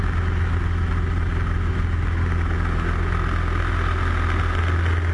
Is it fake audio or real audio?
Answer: real